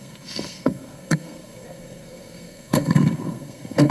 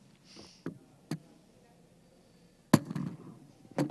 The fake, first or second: first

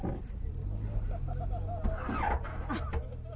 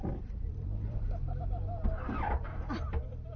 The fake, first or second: second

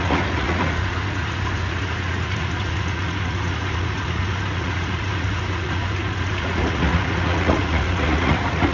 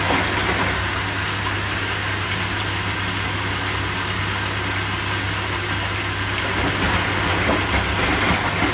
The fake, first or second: first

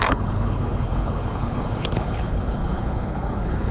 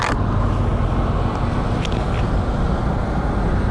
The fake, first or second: first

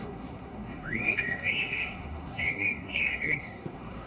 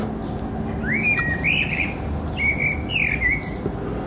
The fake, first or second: first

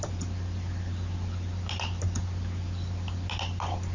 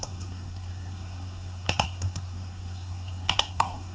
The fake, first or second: second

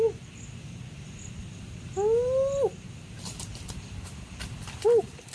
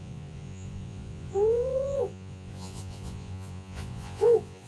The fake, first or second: second